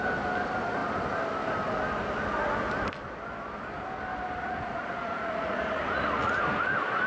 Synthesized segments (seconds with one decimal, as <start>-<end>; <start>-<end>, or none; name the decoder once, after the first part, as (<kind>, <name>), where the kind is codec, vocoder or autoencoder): 4.4-6.4 (vocoder, Vocos)

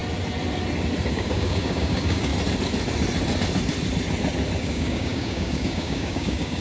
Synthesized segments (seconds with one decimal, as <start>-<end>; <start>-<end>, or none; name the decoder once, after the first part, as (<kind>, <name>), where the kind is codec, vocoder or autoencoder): 1.1-2.3 (codec, DAC); 4.6-6.6

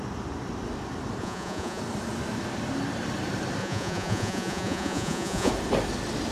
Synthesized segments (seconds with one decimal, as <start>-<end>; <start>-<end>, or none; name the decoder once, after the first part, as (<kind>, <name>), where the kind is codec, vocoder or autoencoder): 1.2-1.8 (vocoder, Vocos); 3.6-5.5

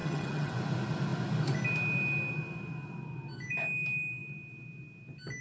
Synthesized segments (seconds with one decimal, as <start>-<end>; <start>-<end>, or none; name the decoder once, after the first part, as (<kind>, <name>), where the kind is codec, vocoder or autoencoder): 0.0-0.5 (vocoder, HiFi-GAN)

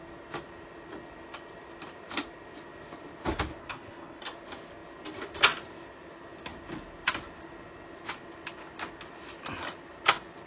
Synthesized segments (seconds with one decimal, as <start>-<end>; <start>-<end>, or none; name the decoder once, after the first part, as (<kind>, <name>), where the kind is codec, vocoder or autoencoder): 3.6-4.2 (codec, HILCodec)

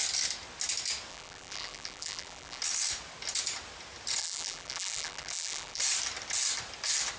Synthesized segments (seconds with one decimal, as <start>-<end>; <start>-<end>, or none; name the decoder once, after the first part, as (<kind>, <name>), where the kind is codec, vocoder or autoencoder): 1.1-2.6 (vocoder, BigVGAN v2); 4.2-5.8

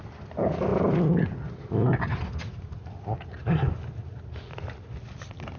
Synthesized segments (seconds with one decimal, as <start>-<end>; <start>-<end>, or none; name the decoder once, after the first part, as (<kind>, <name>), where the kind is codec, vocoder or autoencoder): none

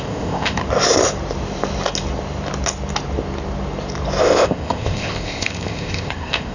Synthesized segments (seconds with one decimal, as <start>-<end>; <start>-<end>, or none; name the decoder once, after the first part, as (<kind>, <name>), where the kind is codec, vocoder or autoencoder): 0.0-0.6 (codec, ZipCodec); 4.2-6.5